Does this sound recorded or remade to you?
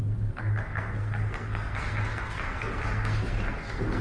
remade